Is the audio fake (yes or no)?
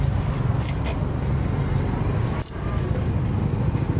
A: no